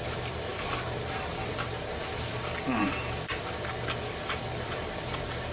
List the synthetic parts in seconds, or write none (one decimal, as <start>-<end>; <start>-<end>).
0.0-2.3; 4.1-5.5